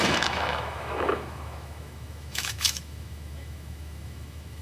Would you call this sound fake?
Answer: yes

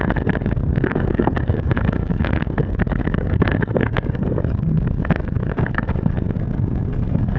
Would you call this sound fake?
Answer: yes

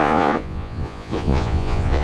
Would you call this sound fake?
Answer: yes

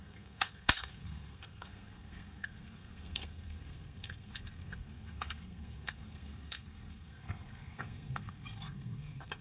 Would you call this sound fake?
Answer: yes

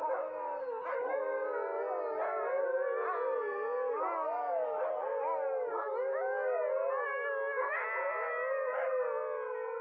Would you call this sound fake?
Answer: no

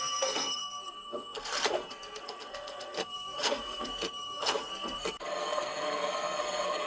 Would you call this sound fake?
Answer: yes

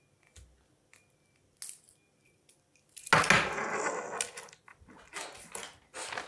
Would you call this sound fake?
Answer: no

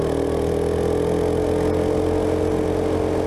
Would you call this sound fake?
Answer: no